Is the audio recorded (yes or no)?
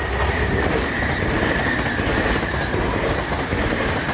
yes